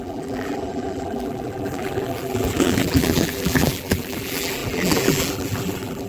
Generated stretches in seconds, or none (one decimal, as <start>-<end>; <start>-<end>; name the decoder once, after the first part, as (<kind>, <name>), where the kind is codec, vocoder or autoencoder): 0.0-6.1 (vocoder, BigVGAN v2)